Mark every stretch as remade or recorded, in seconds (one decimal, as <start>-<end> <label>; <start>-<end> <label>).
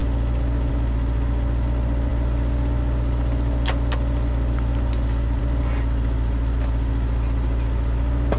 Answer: 0.0-8.4 recorded